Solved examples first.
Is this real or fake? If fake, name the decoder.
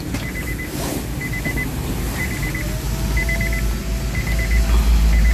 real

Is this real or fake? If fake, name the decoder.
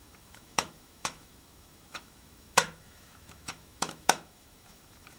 fake, autoencoder, DAC-VAE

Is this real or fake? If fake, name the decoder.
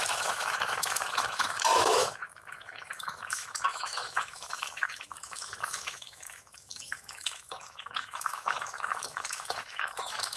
fake, autoencoder, DAC-VAE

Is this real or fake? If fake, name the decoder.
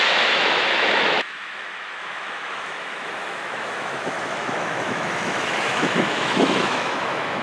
fake, autoencoder, DAC-VAE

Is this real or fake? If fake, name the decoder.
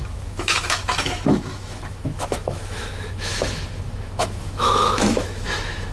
fake, autoencoder, DAC-VAE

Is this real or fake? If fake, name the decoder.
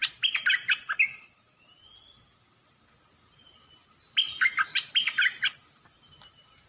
real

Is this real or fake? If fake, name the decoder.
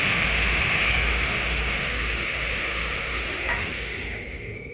fake, autoencoder, DAC-VAE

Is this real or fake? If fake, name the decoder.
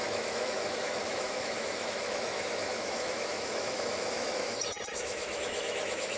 fake, autoencoder, DAC-VAE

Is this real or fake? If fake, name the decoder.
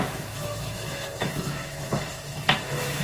fake, autoencoder, DAC-VAE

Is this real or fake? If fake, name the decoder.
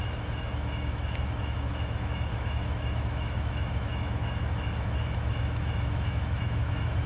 fake, autoencoder, DAC-VAE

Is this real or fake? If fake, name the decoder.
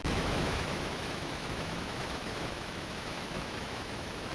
fake, autoencoder, DAC-VAE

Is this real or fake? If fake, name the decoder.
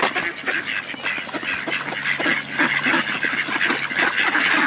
real